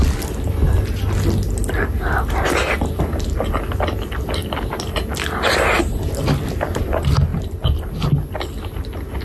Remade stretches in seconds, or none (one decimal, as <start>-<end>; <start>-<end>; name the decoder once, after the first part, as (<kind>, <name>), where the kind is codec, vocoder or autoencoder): none